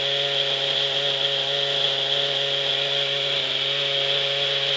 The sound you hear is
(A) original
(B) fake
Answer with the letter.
A